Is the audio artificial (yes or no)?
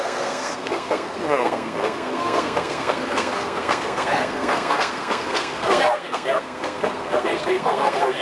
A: yes